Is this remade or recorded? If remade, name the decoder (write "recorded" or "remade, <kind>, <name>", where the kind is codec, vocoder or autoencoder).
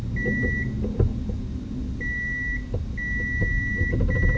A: recorded